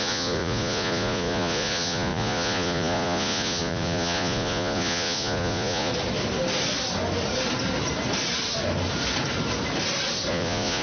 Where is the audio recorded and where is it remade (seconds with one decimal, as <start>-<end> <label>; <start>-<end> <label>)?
0.0-5.9 remade; 5.9-10.3 recorded; 10.3-10.8 remade